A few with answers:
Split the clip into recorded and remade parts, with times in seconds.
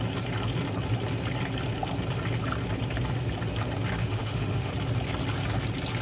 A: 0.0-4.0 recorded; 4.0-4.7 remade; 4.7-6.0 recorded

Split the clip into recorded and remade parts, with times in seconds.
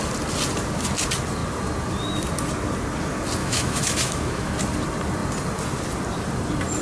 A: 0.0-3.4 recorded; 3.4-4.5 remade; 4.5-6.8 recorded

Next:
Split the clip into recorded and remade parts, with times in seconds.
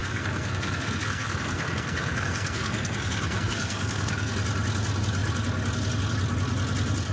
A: 0.0-4.3 remade; 4.3-7.1 recorded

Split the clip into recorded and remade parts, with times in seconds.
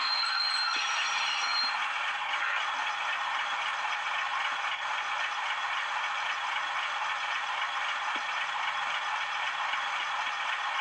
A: 0.0-10.8 recorded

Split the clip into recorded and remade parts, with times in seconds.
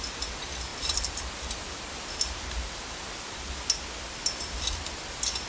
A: 0.0-5.5 recorded